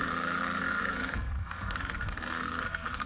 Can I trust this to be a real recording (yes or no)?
no